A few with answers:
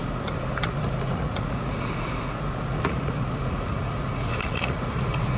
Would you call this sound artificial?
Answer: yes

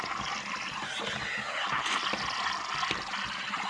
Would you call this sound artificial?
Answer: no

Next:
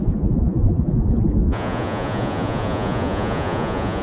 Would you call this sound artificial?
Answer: yes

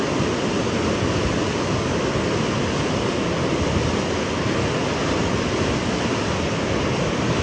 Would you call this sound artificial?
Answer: no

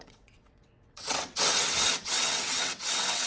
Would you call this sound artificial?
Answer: yes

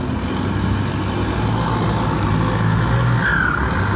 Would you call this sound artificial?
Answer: no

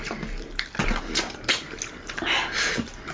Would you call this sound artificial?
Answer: no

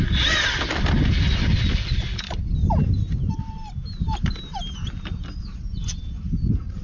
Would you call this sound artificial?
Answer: no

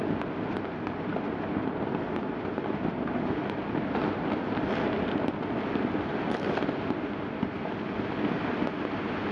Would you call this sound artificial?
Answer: no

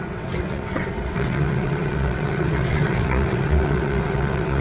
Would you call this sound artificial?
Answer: yes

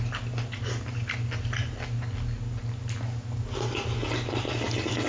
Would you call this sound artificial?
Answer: no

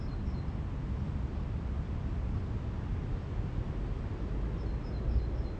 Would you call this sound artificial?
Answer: no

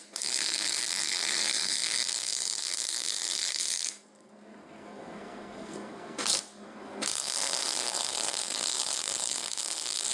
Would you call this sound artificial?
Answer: yes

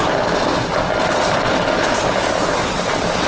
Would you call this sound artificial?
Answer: no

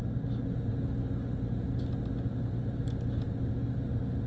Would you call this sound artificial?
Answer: no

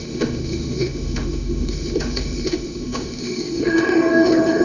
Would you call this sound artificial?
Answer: yes